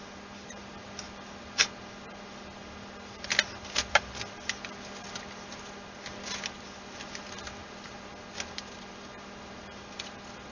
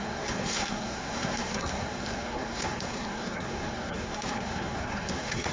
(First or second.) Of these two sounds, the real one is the first